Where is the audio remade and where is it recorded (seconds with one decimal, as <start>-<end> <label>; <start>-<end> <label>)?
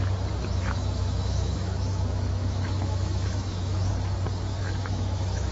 0.0-0.6 recorded; 0.6-3.9 remade; 3.9-4.5 recorded; 4.5-5.5 remade